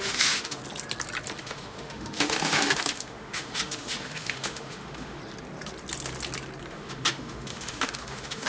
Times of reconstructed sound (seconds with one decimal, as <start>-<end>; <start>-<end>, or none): 0.0-0.6; 1.4-5.2; 6.7-8.5